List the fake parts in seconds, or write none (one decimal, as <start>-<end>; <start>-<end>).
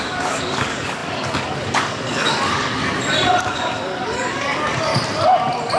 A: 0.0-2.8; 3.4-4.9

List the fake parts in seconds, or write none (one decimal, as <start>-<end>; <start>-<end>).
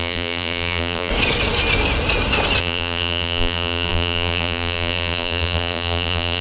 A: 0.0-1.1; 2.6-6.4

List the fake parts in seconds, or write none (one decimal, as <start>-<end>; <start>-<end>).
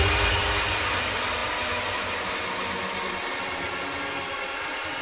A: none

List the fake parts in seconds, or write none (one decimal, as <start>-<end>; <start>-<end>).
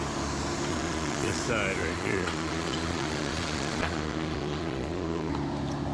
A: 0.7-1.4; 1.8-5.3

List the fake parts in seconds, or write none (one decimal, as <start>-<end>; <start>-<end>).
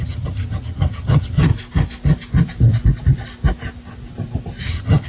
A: 0.0-1.5; 4.6-5.1